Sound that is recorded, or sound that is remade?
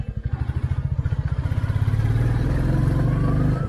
recorded